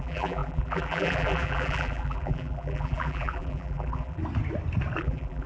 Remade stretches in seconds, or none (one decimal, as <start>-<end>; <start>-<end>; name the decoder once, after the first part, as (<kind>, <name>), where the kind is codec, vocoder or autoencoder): 0.0-4.2 (vocoder, BigVGAN v2); 5.0-5.5